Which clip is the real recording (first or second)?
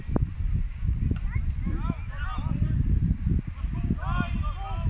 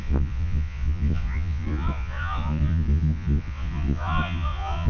first